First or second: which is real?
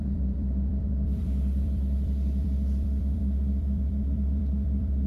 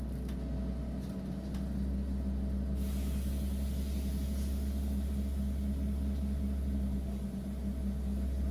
second